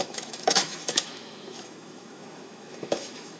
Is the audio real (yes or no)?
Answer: no